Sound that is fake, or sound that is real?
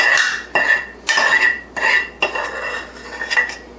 real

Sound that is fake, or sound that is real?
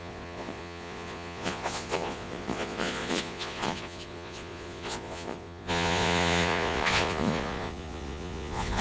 fake